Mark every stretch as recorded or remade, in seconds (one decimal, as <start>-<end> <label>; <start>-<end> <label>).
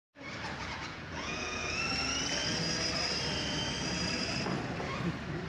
0.0-0.6 recorded; 0.6-1.8 remade; 1.8-5.5 recorded